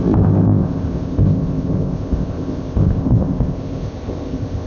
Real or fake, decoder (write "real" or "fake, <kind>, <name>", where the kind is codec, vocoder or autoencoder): fake, codec, ZipCodec